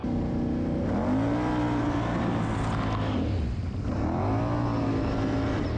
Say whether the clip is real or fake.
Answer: real